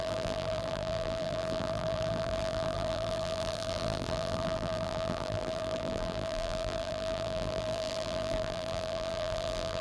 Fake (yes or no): yes